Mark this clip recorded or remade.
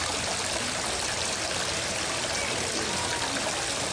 recorded